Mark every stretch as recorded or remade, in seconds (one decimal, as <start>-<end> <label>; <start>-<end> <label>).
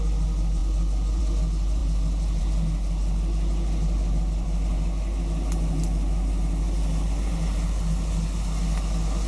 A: 0.0-9.3 recorded